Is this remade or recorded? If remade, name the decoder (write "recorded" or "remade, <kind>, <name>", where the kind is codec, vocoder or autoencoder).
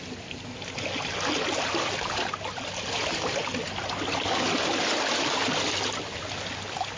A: recorded